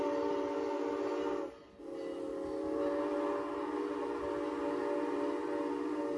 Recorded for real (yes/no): yes